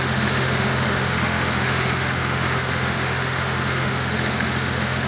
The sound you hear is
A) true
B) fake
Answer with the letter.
B